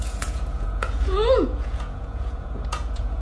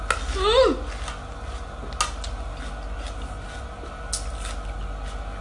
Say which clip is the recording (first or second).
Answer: second